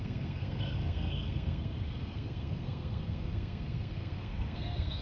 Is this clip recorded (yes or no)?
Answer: no